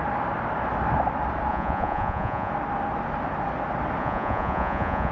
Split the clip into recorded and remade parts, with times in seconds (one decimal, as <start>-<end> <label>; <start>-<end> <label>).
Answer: 0.0-1.5 recorded; 1.5-2.5 remade; 2.5-4.0 recorded; 4.0-5.1 remade